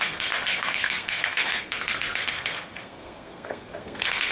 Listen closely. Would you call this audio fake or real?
fake